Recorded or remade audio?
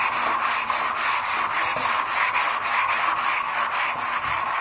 recorded